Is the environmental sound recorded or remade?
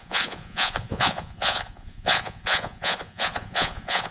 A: remade